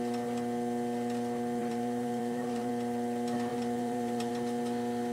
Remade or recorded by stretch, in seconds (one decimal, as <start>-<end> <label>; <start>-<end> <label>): 0.0-1.6 recorded; 1.6-2.7 remade; 2.7-3.5 recorded; 3.5-4.3 remade; 4.3-5.1 recorded